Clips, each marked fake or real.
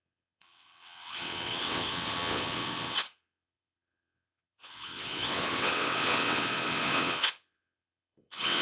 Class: fake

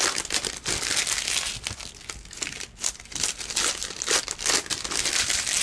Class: real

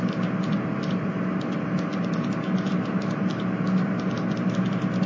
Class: real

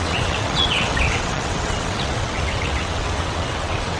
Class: fake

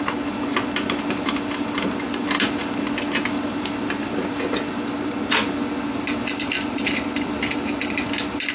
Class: real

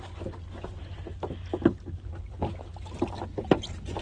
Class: real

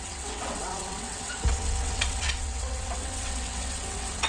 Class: fake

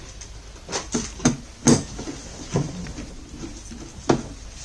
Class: real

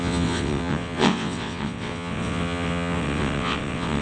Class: fake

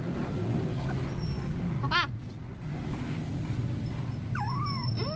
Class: real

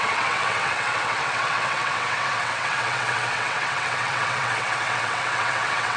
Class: fake